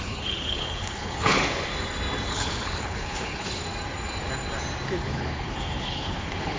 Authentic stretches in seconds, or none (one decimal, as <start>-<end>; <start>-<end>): 1.7-2.3; 3.6-5.0